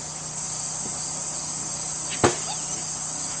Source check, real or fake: real